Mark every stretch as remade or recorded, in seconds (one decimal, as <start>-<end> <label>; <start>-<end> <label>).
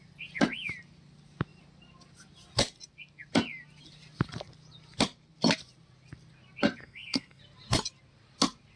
0.0-6.8 recorded; 6.8-7.4 remade; 7.4-8.8 recorded